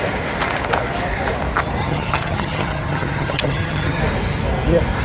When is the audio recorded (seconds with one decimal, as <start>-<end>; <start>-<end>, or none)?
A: 0.0-1.8; 4.0-5.0